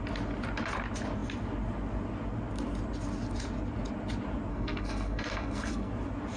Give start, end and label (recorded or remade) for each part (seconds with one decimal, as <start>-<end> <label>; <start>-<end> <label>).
0.0-4.5 recorded; 4.5-5.9 remade; 5.9-6.4 recorded